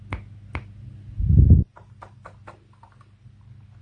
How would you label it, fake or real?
real